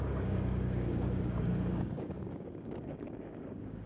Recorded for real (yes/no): no